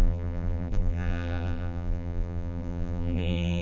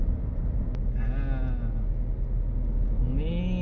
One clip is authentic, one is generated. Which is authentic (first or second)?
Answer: second